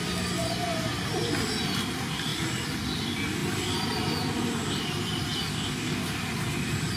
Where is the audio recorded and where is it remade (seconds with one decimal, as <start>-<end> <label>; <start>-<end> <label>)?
0.0-5.5 recorded; 5.5-6.0 remade; 6.0-7.0 recorded